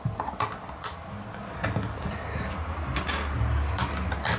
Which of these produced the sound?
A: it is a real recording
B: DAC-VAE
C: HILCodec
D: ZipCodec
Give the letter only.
A